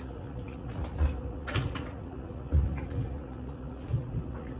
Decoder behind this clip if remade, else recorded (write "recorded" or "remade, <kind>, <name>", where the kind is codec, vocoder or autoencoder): remade, vocoder, Vocos